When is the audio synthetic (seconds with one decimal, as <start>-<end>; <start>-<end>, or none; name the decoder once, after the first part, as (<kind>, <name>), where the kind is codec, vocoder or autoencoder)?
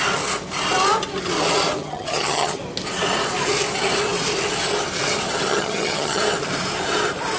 1.8-2.6 (vocoder, HiFi-GAN); 5.5-6.2